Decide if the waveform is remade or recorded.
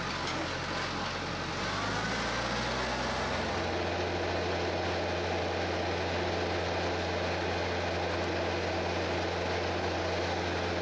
recorded